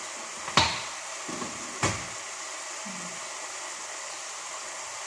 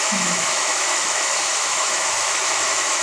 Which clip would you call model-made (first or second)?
second